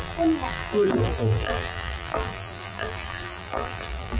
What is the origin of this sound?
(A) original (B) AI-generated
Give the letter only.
B